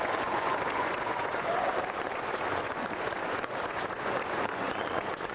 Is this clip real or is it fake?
fake